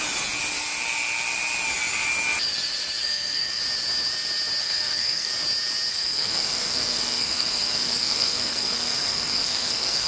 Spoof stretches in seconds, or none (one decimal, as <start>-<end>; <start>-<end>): 3.0-3.6; 4.6-5.3; 5.9-10.1